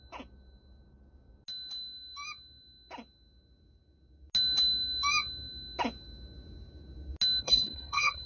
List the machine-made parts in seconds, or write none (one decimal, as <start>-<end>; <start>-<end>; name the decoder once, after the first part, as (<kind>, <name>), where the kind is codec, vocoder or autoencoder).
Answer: 7.4-8.3 (codec, HILCodec)